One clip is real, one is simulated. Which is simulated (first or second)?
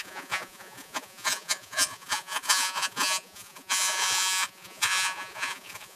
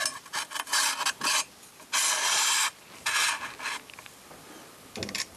first